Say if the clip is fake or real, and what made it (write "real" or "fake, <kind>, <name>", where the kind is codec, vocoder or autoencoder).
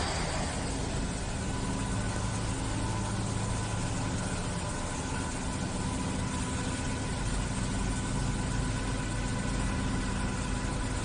real